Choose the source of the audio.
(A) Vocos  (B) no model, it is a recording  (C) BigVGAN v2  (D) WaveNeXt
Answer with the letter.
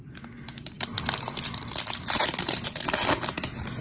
B